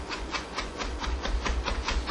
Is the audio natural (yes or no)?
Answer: no